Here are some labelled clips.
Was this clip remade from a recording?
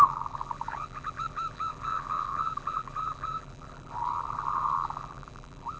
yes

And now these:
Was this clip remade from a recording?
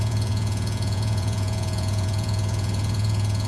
yes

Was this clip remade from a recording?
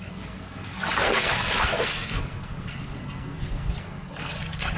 yes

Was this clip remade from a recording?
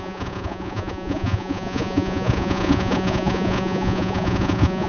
yes